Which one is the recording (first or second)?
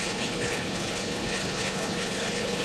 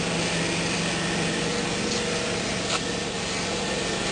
second